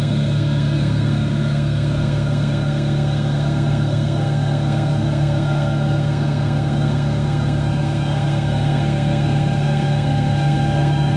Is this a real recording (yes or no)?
no